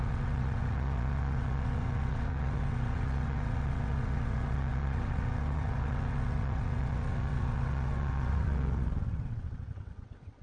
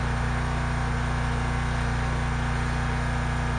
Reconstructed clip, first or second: first